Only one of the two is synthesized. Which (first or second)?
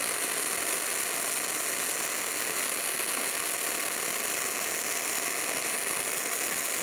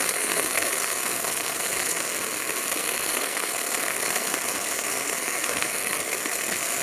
second